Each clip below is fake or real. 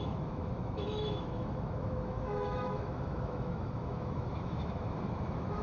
fake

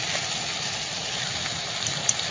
real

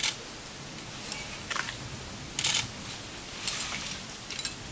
real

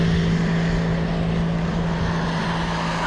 real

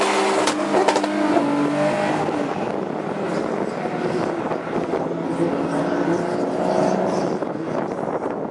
real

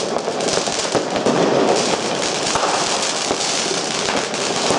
real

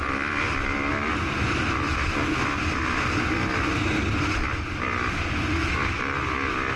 real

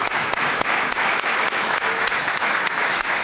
fake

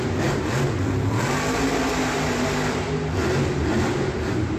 real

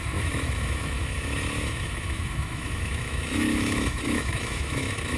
fake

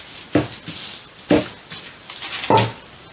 real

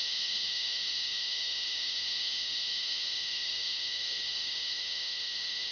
fake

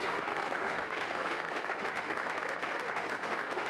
fake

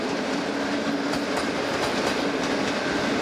real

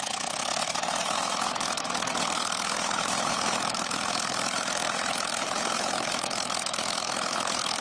fake